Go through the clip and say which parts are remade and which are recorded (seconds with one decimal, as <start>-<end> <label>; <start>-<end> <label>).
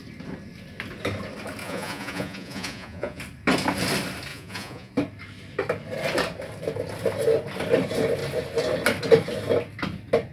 0.0-1.6 recorded; 1.6-3.2 remade; 3.2-4.3 recorded; 4.3-4.9 remade; 4.9-10.3 recorded